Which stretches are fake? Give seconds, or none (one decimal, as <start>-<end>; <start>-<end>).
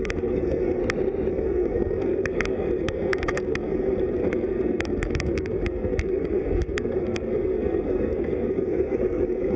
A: 0.0-0.8; 1.3-9.6